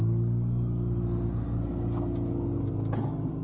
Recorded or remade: recorded